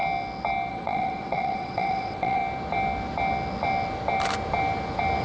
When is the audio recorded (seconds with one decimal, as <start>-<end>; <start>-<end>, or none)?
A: 0.0-0.7; 2.4-5.2